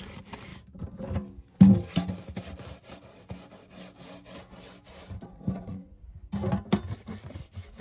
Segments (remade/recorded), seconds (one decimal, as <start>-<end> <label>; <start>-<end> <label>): 0.0-5.3 recorded; 5.3-6.0 remade; 6.0-7.8 recorded